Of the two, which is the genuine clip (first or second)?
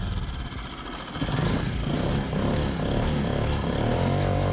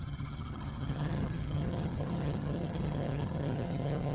first